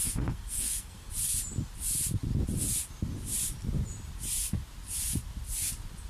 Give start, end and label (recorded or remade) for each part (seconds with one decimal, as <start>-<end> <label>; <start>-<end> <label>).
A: 0.0-1.1 remade; 1.1-6.1 recorded